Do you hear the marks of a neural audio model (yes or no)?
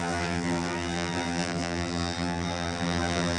yes